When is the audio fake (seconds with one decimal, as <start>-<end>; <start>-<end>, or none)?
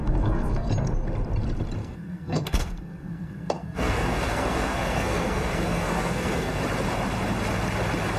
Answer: 0.0-0.7; 1.8-6.6